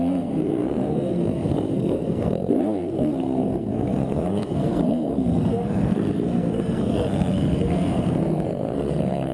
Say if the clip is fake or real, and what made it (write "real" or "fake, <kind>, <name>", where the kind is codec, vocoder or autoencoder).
fake, codec, SNAC